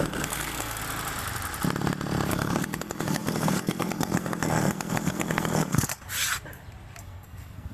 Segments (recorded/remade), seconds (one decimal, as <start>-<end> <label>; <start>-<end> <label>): 0.0-0.8 remade; 0.8-2.3 recorded; 2.3-5.9 remade; 5.9-7.0 recorded; 7.0-7.7 remade